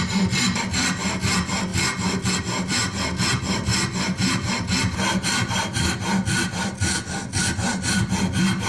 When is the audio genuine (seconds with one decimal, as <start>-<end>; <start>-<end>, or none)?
0.0-8.7